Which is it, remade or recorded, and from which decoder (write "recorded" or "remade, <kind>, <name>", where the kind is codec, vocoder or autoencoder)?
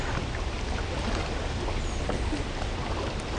recorded